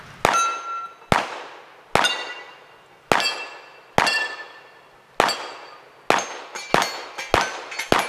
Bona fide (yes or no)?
yes